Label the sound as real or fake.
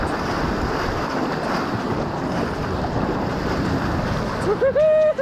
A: real